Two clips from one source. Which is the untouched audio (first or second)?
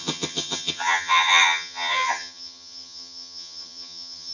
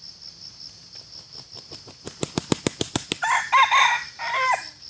second